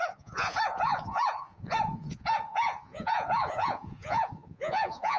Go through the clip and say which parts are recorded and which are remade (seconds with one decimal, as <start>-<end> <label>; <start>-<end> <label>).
0.0-5.2 remade